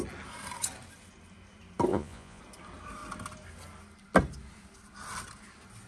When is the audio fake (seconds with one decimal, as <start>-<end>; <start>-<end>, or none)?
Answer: 1.9-2.4